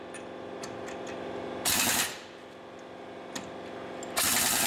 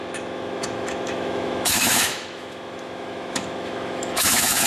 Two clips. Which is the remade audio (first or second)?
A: second